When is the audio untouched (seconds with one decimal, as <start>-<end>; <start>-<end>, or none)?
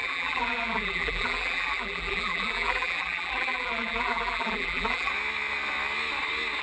5.1-6.6